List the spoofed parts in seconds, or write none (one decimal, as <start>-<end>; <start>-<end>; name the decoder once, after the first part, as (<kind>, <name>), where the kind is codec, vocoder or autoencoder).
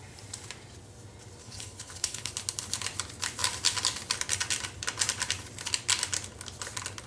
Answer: 1.4-2.3 (codec, HILCodec)